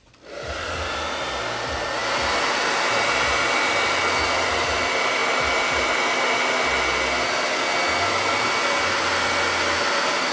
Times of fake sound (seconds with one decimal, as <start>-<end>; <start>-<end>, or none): none

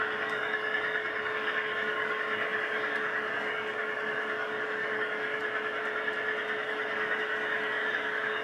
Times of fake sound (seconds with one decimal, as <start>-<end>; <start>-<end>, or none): 0.0-5.4; 6.6-8.4

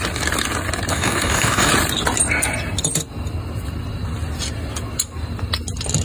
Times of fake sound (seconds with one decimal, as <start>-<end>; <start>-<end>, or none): 0.9-1.7

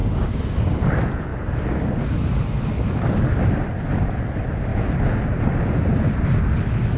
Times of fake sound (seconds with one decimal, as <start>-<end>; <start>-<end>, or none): 0.0-0.6

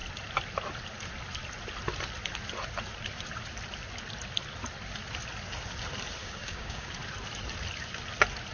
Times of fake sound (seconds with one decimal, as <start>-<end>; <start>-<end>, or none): 6.2-6.9

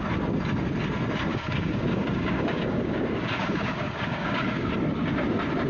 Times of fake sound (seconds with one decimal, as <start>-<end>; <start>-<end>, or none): 1.3-4.7

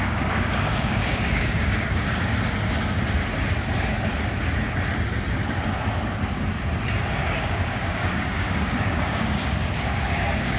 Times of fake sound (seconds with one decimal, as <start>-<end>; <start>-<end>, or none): 0.0-2.3; 7.1-10.6

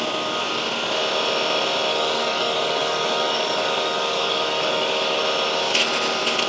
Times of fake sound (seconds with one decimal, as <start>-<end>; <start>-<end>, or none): 1.9-5.2